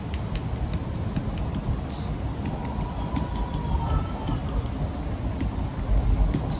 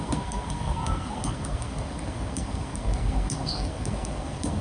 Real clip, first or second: first